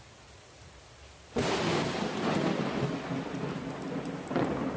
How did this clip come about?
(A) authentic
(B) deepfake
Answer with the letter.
A